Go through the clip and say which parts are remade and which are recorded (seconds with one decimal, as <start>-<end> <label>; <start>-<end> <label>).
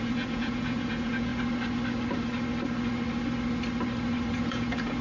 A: 0.0-1.3 remade; 1.3-4.3 recorded; 4.3-5.0 remade